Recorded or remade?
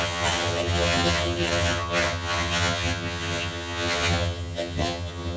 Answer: remade